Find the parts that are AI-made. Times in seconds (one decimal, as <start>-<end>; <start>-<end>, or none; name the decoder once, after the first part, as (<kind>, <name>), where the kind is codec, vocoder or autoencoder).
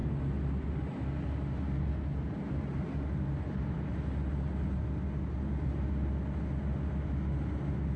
none